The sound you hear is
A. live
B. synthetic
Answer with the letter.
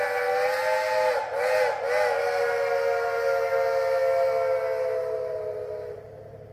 A